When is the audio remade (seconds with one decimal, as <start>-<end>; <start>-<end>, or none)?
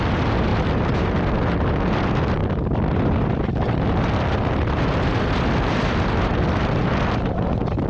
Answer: none